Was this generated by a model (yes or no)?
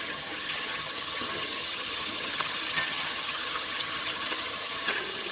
yes